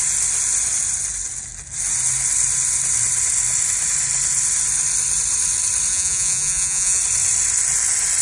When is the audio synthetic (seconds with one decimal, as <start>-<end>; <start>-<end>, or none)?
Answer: 5.9-7.0